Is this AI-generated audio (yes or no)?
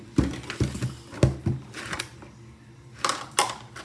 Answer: no